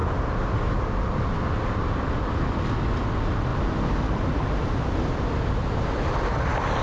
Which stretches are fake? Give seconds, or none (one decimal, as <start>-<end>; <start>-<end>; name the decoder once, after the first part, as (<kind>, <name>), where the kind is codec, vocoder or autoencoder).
3.5-4.5 (vocoder, BigVGAN v2); 5.6-6.2